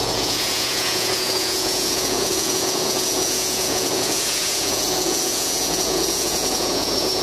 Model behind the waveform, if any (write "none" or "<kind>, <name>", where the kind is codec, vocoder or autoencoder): vocoder, Vocos